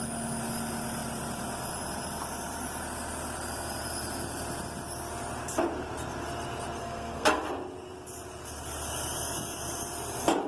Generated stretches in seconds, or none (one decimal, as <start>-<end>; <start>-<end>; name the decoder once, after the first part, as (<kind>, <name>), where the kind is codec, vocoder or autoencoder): 6.8-7.4 (codec, SNAC)